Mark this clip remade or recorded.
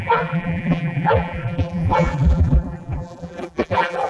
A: remade